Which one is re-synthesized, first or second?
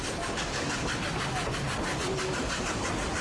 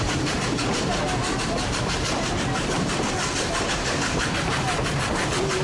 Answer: second